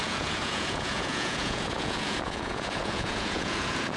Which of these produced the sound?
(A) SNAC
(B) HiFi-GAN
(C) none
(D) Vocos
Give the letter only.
D